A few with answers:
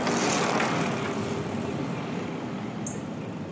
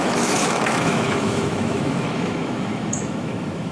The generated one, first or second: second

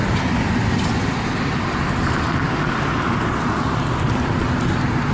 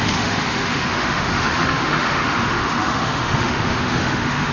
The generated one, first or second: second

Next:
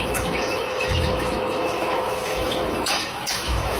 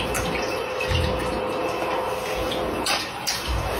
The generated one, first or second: first